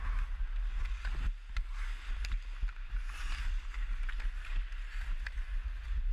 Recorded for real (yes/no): yes